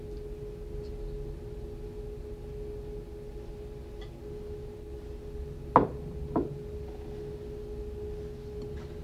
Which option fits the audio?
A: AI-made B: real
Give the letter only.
B